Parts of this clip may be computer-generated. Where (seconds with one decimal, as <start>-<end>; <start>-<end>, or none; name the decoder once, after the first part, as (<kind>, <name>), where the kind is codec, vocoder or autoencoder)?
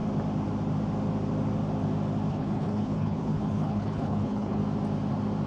2.3-4.6 (codec, HILCodec)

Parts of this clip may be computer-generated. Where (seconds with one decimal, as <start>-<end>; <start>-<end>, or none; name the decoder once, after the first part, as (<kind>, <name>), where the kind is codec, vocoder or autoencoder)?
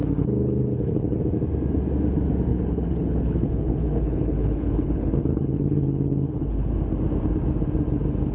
0.0-1.2 (codec, HILCodec); 2.5-6.7